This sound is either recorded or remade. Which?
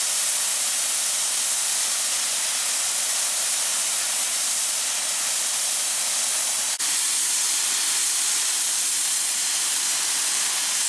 recorded